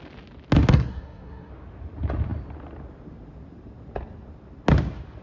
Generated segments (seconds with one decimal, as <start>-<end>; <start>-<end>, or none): 0.7-1.5